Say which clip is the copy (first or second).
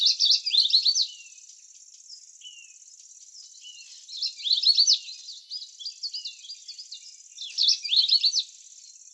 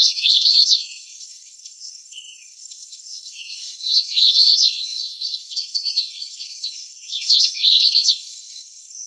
second